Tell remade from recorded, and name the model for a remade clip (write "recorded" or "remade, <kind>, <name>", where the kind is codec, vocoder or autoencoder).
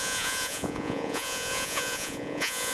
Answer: remade, vocoder, Vocos